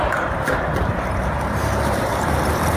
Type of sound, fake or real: fake